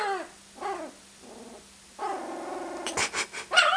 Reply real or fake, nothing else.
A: real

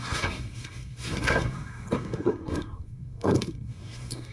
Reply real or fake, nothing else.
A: fake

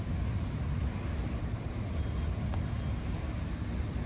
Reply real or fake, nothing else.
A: real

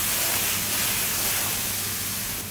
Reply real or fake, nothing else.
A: real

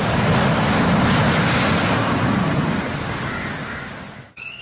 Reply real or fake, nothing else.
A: real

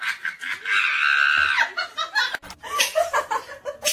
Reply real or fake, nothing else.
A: real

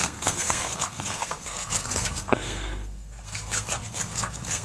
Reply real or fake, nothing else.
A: fake